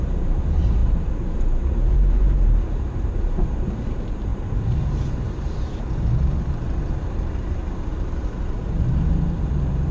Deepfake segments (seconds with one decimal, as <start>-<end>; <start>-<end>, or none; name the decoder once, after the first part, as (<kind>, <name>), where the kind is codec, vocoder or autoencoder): 0.0-9.9 (vocoder, BigVGAN v2)